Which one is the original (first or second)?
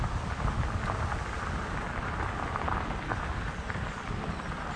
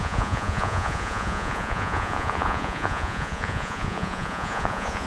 first